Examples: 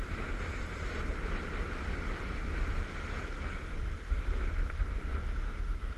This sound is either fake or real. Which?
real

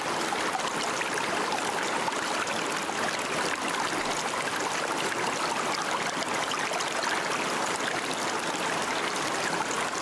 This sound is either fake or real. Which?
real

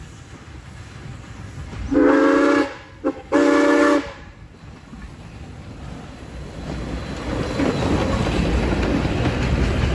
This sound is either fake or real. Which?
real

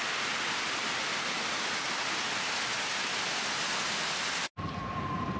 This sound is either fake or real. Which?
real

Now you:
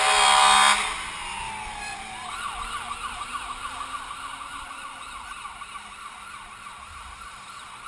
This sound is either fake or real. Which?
real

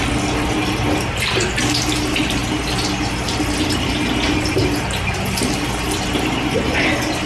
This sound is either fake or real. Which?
real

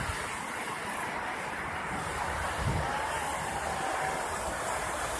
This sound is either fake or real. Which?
real